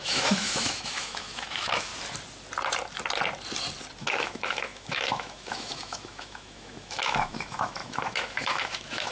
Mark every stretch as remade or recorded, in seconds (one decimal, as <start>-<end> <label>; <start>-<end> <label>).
0.0-1.9 remade; 1.9-4.0 recorded; 4.0-9.1 remade